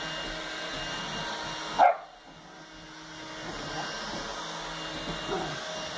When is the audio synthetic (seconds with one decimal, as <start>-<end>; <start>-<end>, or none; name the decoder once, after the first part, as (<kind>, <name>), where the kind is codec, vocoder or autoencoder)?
none